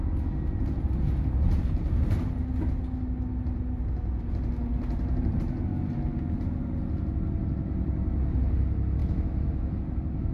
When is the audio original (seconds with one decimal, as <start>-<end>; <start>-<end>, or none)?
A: 0.0-9.0; 9.8-10.3